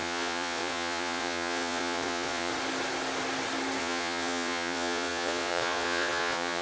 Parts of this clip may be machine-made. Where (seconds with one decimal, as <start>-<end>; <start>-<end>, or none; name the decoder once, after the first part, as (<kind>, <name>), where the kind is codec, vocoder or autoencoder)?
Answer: 0.0-2.5 (vocoder, Vocos); 3.8-6.6